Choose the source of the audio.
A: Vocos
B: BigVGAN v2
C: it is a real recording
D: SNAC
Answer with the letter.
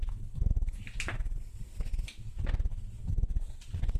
C